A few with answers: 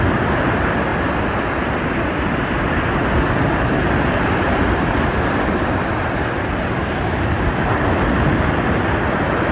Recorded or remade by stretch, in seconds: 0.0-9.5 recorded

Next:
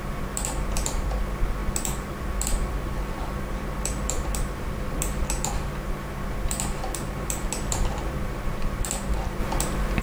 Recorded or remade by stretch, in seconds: 0.0-9.4 remade; 9.4-10.0 recorded

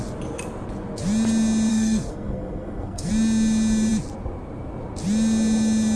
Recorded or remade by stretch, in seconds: 0.0-1.7 recorded; 1.7-3.1 remade; 3.1-6.0 recorded

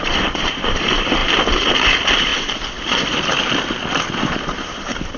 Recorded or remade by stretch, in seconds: 0.0-2.3 remade; 2.3-4.2 recorded; 4.2-5.2 remade

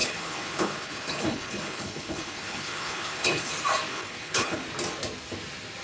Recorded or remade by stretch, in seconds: 0.0-3.5 remade; 3.5-3.9 recorded; 3.9-4.6 remade; 4.6-5.8 recorded

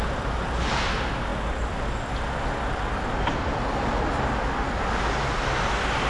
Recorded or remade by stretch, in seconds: 0.0-6.1 recorded

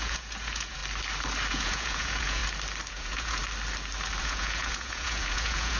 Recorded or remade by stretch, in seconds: 0.0-0.8 remade; 0.8-1.5 recorded; 1.5-2.4 remade; 2.4-2.9 recorded; 2.9-3.4 remade; 3.4-4.2 recorded; 4.2-5.8 remade

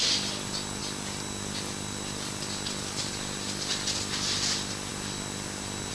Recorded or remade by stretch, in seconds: 0.0-5.9 recorded